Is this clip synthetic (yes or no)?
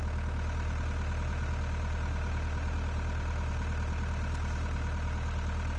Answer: no